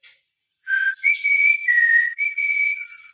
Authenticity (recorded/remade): remade